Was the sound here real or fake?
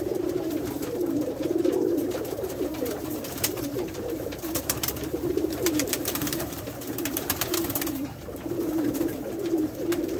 fake